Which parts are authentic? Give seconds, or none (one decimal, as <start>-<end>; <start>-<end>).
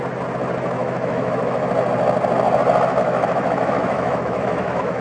0.0-0.8; 1.7-3.0